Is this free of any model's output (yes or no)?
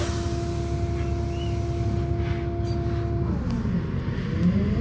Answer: yes